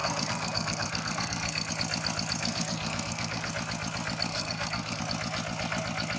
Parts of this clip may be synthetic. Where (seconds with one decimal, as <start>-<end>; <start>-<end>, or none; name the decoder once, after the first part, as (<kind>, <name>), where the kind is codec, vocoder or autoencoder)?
0.0-1.7 (codec, SNAC); 2.4-3.5; 4.3-5.0